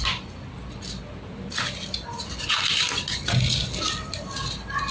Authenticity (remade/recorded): recorded